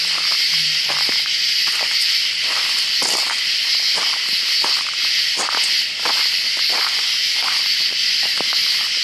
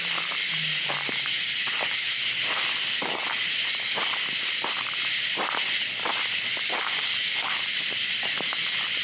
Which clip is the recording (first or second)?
first